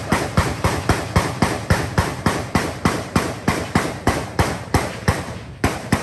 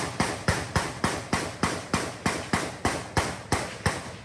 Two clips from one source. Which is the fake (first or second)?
first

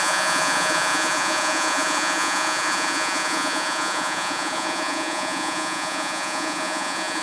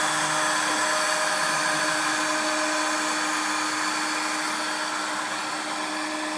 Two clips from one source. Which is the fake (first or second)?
first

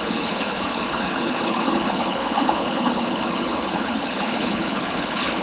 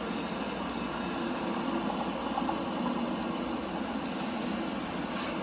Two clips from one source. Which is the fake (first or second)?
first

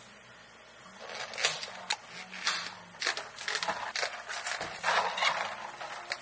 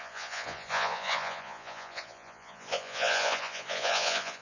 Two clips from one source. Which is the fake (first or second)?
second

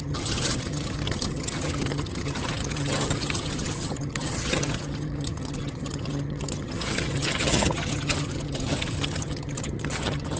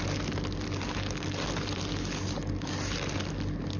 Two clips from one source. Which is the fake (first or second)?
first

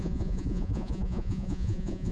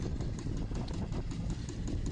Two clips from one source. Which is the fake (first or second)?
first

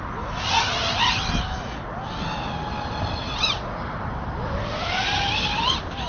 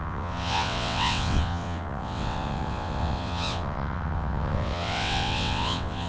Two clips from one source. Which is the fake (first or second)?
second